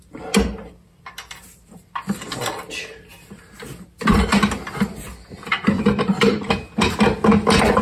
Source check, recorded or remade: recorded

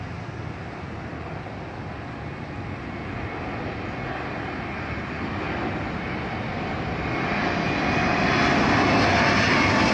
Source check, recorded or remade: recorded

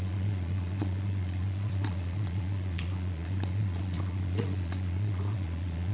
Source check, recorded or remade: remade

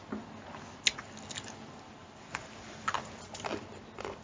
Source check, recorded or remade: recorded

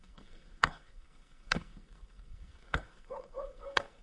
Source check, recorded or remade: remade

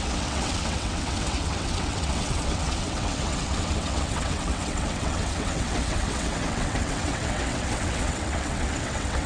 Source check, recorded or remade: remade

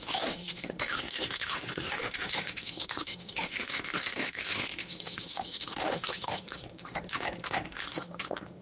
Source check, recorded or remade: remade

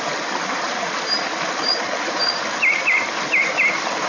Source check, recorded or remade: recorded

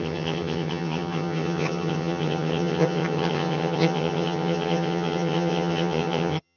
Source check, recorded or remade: remade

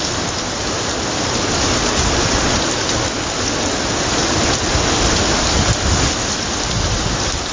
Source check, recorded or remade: recorded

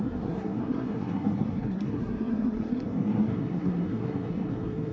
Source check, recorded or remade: remade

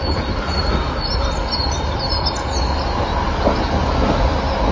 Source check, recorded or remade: recorded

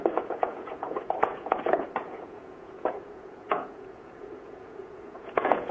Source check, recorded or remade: remade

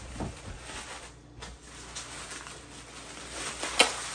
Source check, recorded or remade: recorded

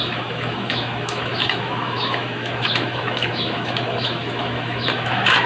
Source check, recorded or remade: remade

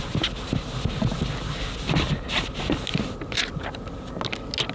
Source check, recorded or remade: recorded